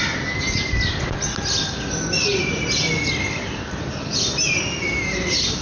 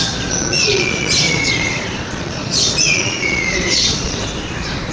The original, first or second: first